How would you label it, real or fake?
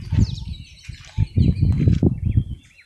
real